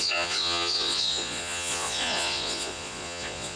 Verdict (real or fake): fake